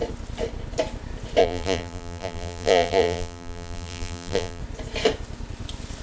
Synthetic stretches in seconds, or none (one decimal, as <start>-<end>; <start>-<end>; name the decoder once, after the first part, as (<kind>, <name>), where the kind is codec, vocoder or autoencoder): 1.4-4.6 (vocoder, BigVGAN v2)